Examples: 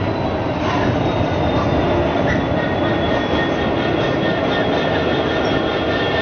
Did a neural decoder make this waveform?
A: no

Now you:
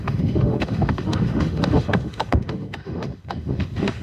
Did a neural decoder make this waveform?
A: yes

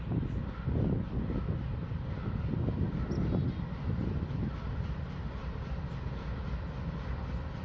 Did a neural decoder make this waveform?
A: no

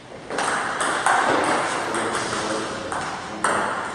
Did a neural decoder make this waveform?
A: no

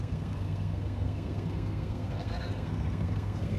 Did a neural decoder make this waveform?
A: yes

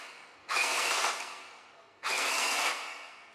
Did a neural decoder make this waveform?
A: yes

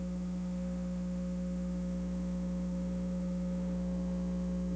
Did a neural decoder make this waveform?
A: yes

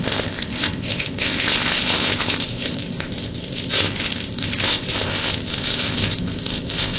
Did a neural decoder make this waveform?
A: yes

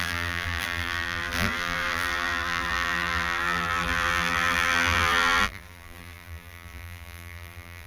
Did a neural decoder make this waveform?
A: yes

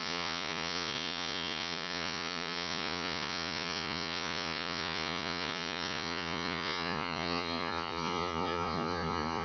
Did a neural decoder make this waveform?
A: yes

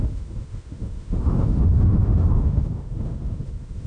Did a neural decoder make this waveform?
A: yes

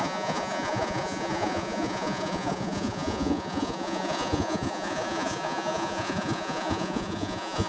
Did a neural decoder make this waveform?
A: yes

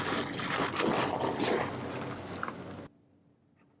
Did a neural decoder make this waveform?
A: no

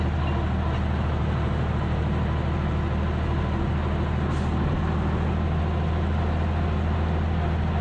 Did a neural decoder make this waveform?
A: no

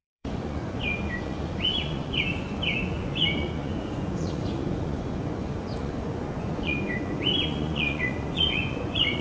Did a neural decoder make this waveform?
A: yes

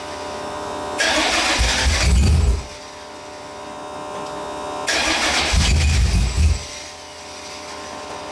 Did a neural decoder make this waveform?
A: no